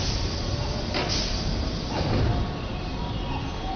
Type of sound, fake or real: real